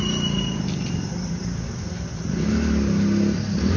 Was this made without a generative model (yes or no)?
yes